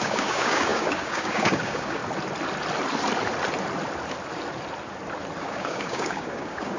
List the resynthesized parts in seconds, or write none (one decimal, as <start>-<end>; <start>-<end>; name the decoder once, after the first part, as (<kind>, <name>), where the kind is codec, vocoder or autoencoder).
0.0-2.0 (codec, DAC); 5.4-6.8